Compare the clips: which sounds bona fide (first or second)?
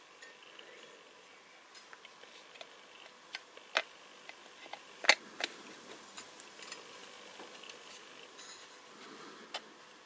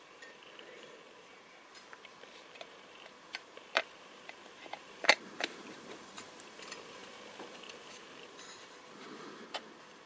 first